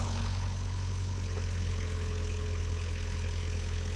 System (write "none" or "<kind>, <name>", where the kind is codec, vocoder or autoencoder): codec, HILCodec